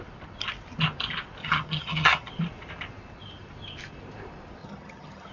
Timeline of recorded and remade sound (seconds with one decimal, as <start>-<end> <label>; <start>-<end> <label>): 0.0-1.4 recorded; 1.4-2.3 remade; 2.3-4.6 recorded; 4.6-5.3 remade